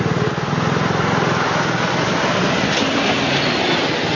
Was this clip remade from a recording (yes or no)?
no